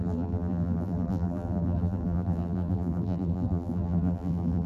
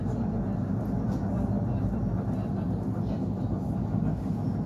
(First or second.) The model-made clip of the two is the first